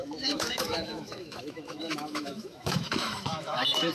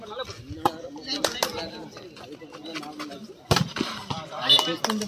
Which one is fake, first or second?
first